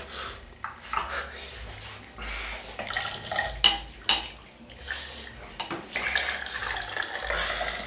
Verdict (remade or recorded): recorded